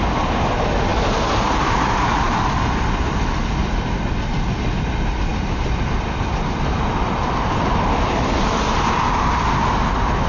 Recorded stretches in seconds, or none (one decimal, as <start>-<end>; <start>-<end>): 0.0-5.3; 9.4-10.3